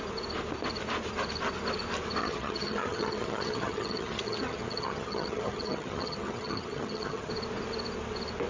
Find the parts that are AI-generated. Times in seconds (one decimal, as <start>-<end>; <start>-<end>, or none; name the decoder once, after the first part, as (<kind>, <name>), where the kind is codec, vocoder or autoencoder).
2.2-7.3 (vocoder, HiFi-GAN)